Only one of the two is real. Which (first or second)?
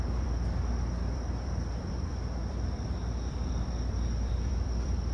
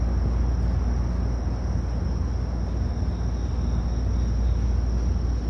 second